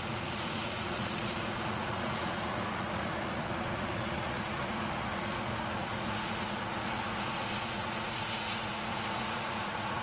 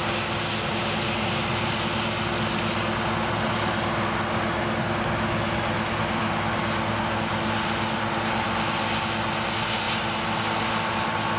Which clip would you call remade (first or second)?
first